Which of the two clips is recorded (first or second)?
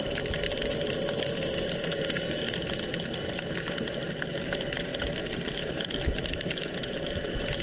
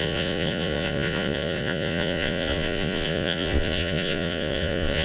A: first